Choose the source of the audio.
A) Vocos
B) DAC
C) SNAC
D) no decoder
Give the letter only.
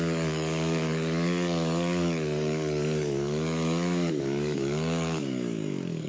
B